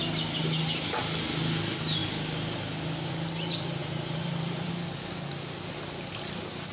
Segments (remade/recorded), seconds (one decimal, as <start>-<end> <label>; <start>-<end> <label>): 0.0-3.8 recorded; 3.8-4.7 remade; 4.7-6.7 recorded